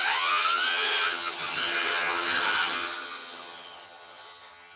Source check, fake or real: fake